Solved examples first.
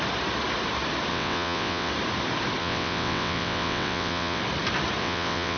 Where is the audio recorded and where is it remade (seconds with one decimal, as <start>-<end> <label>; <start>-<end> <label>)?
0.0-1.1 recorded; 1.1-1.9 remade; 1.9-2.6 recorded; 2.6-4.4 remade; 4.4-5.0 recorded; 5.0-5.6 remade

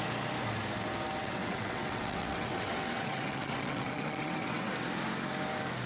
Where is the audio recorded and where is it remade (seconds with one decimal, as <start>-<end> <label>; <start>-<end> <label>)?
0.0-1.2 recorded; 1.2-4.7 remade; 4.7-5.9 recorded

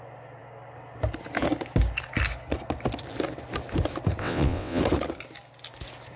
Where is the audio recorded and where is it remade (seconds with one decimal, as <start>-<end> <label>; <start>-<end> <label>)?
0.0-4.2 recorded; 4.2-4.8 remade; 4.8-6.2 recorded

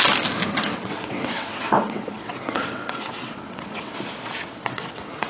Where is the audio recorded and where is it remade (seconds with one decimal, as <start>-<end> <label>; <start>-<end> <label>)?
0.0-0.7 recorded; 0.7-3.9 remade; 3.9-4.5 recorded; 4.5-5.3 remade

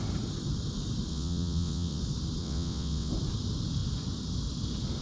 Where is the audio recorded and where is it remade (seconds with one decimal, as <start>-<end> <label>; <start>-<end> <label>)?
0.0-1.1 recorded; 1.1-2.0 remade; 2.0-2.4 recorded; 2.4-3.1 remade; 3.1-5.0 recorded